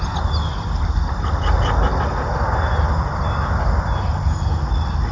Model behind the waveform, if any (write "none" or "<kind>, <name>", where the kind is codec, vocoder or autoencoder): none